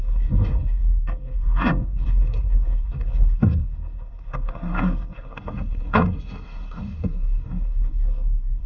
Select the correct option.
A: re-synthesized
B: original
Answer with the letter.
A